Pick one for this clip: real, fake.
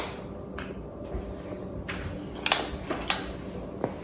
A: real